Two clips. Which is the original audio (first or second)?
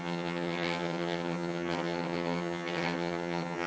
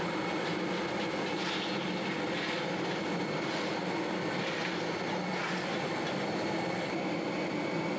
second